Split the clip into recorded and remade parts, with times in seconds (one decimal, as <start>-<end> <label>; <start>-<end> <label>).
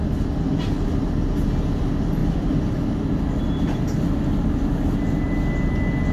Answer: 0.0-6.1 recorded